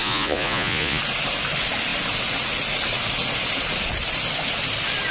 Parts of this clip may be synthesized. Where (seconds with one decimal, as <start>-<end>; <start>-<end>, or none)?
0.0-1.0